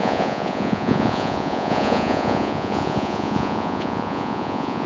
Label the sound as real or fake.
fake